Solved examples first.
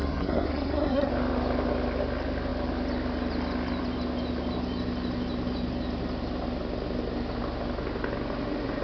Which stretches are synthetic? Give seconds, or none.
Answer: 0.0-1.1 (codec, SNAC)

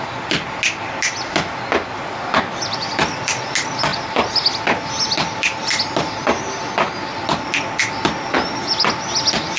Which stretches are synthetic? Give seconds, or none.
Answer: none

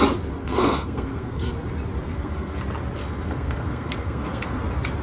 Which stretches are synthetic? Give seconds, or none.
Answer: 0.4-1.5 (codec, SNAC); 2.1-2.6; 3.0-4.6